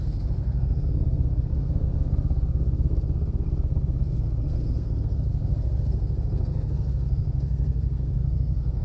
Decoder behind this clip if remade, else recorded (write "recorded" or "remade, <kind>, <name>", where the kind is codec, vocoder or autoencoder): remade, codec, SNAC